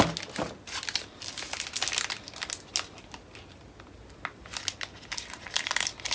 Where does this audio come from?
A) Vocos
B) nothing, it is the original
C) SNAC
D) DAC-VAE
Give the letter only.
B